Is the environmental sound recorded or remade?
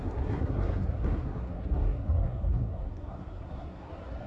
remade